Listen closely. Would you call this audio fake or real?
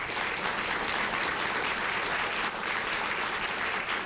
real